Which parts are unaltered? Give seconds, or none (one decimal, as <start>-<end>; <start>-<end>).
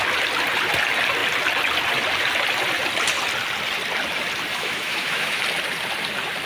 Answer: 0.0-4.5; 5.4-6.5